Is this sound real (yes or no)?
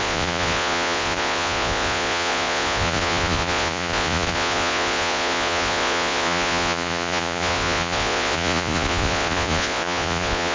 no